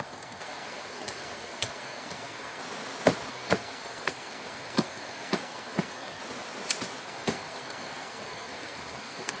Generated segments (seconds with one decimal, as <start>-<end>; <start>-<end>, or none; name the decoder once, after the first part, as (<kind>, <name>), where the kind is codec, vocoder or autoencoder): 0.0-2.6 (codec, SNAC); 3.3-6.2; 7.0-9.4